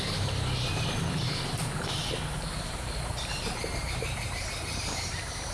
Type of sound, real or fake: fake